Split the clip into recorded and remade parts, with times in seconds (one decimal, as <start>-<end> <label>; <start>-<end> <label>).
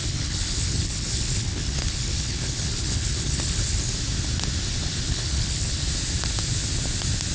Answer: 0.0-3.9 remade; 3.9-5.1 recorded; 5.1-5.8 remade; 5.8-7.3 recorded